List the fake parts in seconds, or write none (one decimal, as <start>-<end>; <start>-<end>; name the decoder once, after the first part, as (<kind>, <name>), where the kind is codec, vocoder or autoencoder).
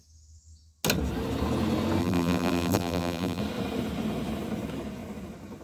2.0-3.4 (vocoder, BigVGAN v2)